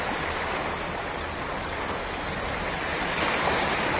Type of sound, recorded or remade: recorded